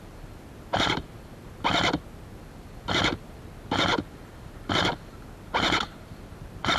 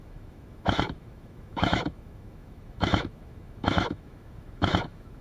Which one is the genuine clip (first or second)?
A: first